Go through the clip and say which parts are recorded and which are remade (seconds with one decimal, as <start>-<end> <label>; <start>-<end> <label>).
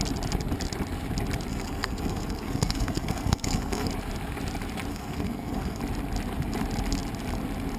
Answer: 0.0-1.5 recorded; 1.5-3.9 remade; 3.9-4.9 recorded; 4.9-5.8 remade; 5.8-7.8 recorded